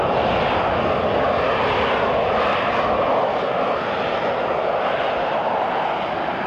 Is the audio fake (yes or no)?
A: no